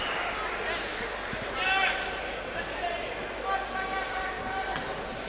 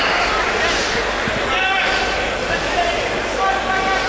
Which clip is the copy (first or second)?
second